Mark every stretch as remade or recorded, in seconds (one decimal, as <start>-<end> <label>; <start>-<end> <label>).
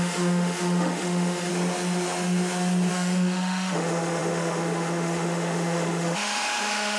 0.0-1.5 remade; 1.5-2.9 recorded; 2.9-7.0 remade